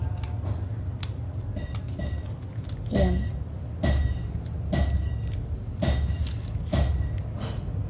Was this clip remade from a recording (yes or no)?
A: no